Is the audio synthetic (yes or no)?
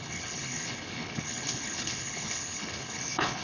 yes